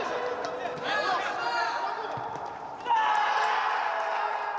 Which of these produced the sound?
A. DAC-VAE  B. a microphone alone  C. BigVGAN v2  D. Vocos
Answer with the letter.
B